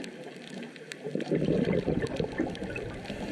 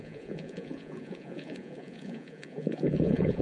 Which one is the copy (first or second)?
second